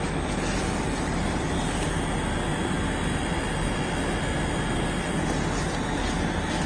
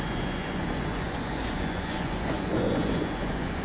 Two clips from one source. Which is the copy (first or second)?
second